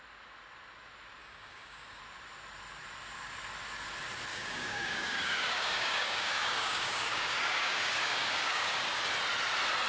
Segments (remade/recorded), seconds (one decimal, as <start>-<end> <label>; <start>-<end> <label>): 0.0-1.2 recorded; 1.2-2.0 remade; 2.0-4.3 recorded; 4.3-9.0 remade; 9.0-9.9 recorded